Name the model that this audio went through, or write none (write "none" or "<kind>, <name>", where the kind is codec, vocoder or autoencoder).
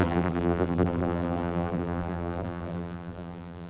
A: vocoder, BigVGAN v2